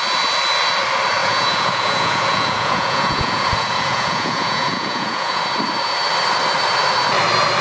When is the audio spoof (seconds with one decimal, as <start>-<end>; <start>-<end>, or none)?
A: 1.2-5.4